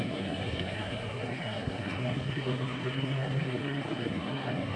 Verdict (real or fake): fake